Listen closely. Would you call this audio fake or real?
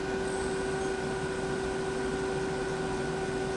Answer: real